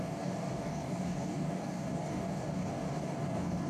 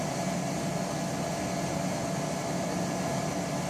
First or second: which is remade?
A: first